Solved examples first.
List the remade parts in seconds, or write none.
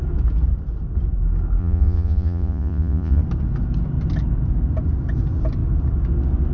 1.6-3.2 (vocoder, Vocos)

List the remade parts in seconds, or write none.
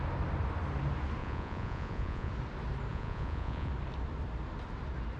1.2-2.3 (vocoder, Vocos); 2.9-3.7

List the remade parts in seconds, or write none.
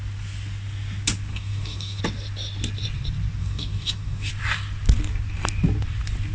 1.3-2.0 (codec, DAC); 3.4-4.3